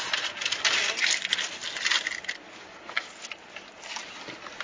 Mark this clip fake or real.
real